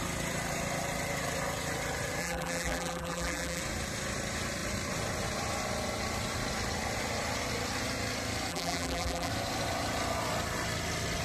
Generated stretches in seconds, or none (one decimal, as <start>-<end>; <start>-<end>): 2.2-3.6; 8.5-9.3